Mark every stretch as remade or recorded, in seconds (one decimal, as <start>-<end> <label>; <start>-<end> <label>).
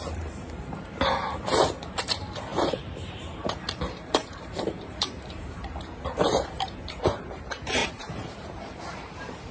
0.0-9.5 remade